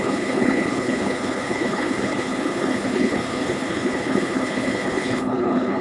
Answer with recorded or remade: remade